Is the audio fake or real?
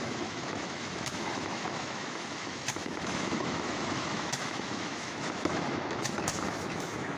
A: fake